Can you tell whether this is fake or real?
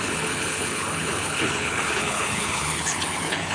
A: fake